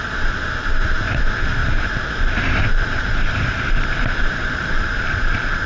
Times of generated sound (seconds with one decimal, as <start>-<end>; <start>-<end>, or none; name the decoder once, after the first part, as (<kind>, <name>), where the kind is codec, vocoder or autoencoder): 1.6-5.0 (vocoder, BigVGAN v2)